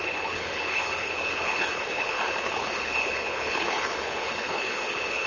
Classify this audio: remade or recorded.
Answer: remade